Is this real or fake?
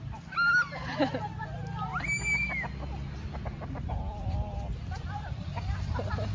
real